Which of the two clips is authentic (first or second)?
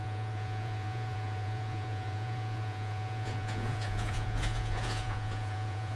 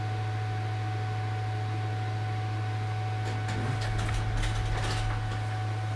second